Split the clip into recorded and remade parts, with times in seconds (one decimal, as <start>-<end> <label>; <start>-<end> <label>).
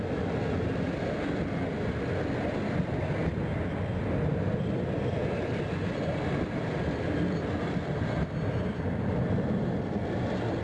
0.0-10.6 recorded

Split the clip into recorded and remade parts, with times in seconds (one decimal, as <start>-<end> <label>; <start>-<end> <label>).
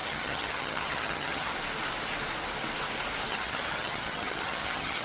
0.0-1.5 remade; 1.5-3.3 recorded; 3.3-5.0 remade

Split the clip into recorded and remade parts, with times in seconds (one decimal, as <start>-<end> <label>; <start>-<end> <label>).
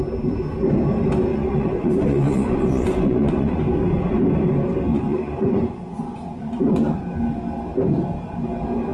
0.0-1.3 recorded; 1.3-3.6 remade; 3.6-4.9 recorded; 4.9-7.0 remade; 7.0-8.9 recorded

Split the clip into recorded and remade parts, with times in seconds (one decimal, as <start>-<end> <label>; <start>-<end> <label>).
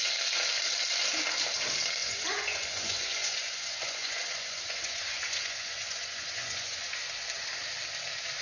0.0-2.0 recorded; 2.0-7.0 remade; 7.0-8.4 recorded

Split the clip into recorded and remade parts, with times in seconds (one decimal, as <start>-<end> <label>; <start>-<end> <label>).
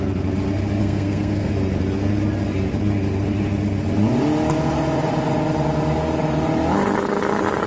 0.0-0.8 recorded; 0.8-1.5 remade; 1.5-7.7 recorded